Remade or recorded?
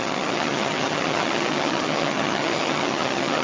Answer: remade